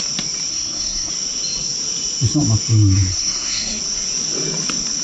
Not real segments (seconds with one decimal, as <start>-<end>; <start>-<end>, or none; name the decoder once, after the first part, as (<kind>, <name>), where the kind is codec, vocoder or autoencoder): 0.5-1.1 (codec, SNAC); 3.1-3.8